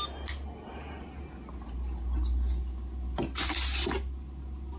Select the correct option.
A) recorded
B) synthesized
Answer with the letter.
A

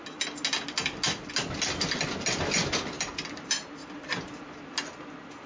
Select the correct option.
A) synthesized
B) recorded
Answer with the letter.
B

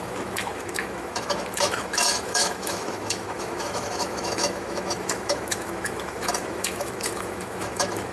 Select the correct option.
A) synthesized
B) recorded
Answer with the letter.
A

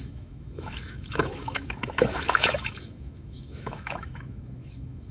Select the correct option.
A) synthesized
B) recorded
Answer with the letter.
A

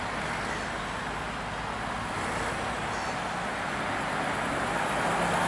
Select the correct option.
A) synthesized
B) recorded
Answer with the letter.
B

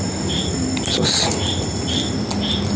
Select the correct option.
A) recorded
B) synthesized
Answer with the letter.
A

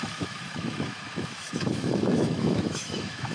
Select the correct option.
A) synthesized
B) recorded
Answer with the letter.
A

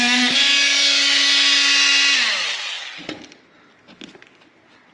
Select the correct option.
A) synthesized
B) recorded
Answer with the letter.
B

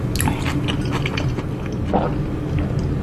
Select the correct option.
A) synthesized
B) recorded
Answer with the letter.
B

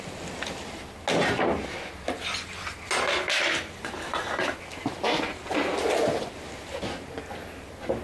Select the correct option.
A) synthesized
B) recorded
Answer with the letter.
B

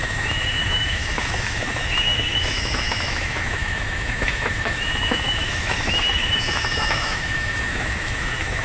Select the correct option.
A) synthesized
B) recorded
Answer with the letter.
A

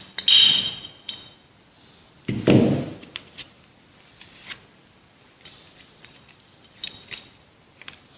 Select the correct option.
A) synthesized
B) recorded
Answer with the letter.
B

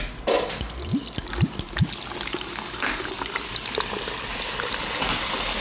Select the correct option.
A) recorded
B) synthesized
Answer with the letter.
A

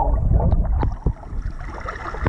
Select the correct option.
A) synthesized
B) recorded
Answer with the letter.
B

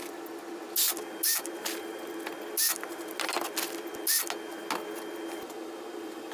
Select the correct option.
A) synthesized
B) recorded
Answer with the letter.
B